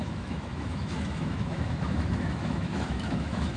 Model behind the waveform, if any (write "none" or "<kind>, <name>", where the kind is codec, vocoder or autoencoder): autoencoder, DAC-VAE